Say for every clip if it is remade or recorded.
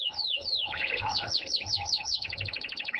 remade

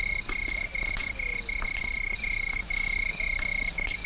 recorded